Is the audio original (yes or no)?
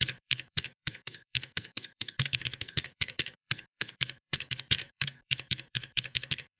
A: no